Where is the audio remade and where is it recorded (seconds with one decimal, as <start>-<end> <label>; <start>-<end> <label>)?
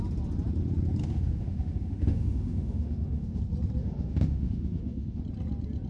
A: 0.0-1.0 recorded; 1.0-3.4 remade; 3.4-3.8 recorded; 3.8-5.2 remade; 5.2-5.9 recorded